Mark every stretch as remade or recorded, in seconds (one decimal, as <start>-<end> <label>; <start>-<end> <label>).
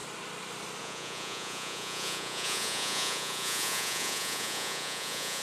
0.0-0.8 recorded; 0.8-5.4 remade